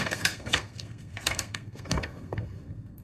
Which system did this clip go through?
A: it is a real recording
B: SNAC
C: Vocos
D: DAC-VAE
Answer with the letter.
B